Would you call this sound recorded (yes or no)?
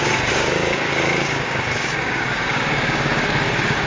no